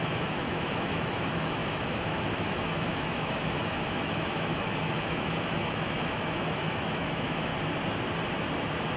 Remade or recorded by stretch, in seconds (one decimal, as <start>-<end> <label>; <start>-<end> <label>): 0.0-7.5 remade; 7.5-9.0 recorded

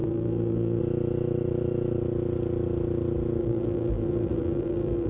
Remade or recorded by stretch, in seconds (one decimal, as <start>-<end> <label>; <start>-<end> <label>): 0.0-0.8 remade; 0.8-3.4 recorded; 3.4-5.1 remade